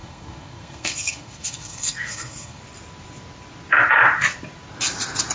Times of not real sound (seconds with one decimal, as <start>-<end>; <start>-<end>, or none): 0.0-2.6

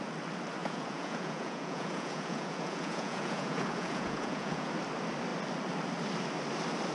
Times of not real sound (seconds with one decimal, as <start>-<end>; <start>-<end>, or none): 0.6-4.7

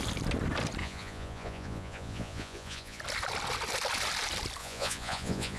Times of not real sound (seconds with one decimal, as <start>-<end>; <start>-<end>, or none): 0.8-3.0; 4.6-5.6

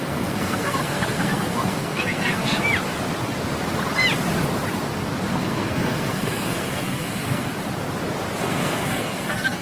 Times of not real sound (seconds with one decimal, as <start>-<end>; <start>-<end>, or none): 0.0-2.6; 5.3-7.5; 8.4-9.6